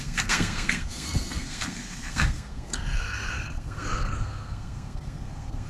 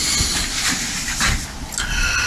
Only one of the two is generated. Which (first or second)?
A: first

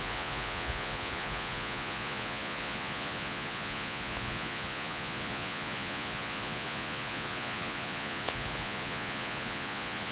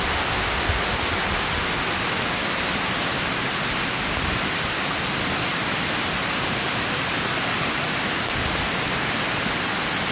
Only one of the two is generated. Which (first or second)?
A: first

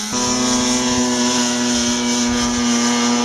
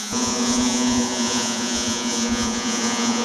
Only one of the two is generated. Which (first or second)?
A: second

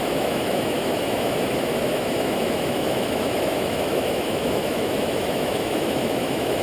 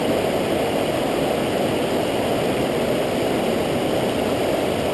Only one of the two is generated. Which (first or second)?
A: first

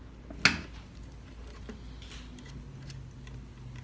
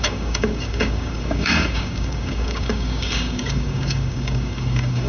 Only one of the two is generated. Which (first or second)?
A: second